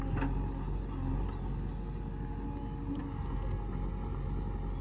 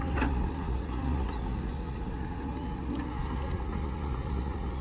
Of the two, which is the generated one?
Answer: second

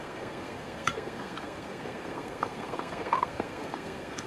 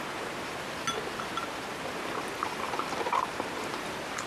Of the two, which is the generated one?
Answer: first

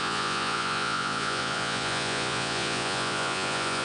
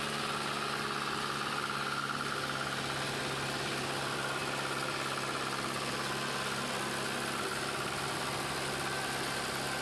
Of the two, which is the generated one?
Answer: first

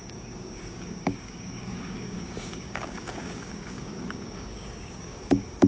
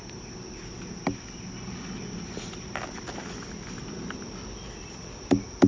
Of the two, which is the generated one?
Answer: first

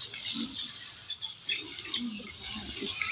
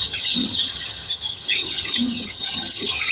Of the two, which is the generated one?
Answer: second